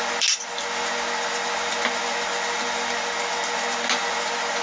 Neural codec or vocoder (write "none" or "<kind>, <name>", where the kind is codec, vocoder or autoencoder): none